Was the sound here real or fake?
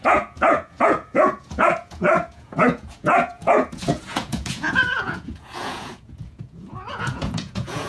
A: fake